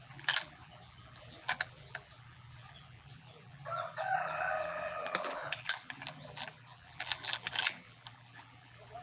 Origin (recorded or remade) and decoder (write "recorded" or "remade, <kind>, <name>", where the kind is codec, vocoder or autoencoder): remade, vocoder, BigVGAN v2